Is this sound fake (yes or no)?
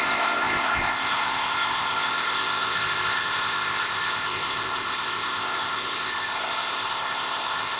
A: yes